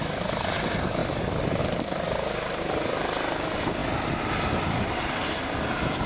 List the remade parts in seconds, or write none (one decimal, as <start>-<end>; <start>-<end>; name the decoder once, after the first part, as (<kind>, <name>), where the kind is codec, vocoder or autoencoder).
none